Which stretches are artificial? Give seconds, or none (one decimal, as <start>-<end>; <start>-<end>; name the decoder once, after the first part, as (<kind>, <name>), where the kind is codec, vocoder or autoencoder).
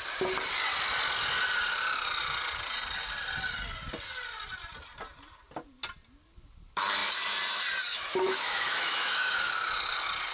7.9-9.7 (autoencoder, DAC-VAE)